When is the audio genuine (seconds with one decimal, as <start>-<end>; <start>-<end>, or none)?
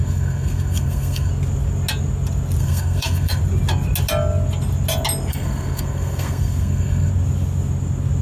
1.3-2.6; 3.4-5.3; 7.1-8.2